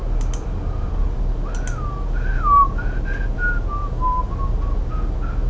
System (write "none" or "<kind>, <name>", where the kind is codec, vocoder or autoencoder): none